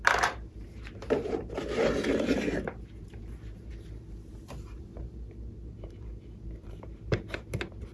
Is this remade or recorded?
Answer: remade